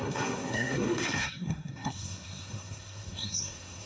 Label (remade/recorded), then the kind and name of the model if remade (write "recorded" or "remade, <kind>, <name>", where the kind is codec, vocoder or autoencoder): remade, codec, SNAC